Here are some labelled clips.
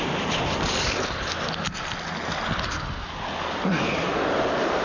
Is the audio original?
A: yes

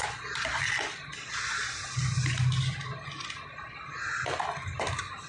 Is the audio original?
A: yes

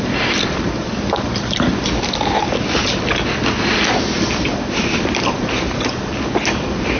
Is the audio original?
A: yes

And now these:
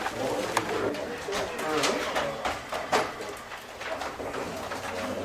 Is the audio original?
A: yes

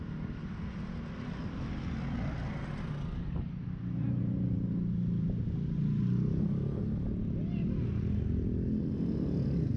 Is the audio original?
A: yes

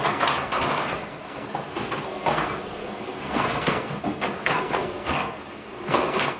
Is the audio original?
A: no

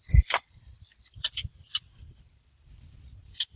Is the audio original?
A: no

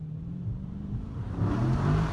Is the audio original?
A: no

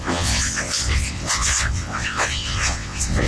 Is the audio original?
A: no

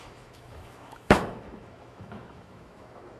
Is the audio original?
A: no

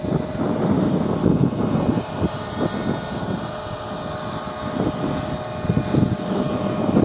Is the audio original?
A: yes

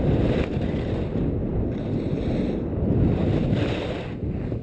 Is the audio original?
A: yes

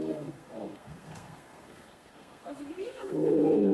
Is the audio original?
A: no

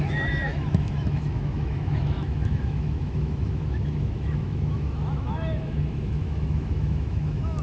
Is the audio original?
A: no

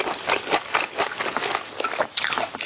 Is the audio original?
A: yes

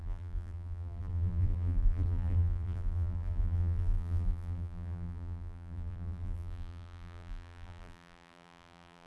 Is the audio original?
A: no